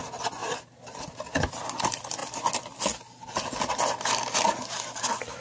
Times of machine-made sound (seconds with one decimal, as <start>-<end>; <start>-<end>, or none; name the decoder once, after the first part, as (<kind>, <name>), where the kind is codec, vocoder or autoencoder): none